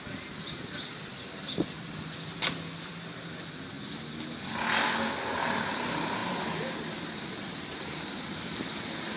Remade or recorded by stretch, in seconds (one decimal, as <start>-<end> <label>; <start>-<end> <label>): 0.0-9.2 recorded